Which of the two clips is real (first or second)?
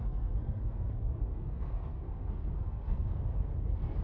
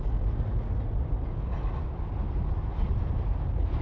second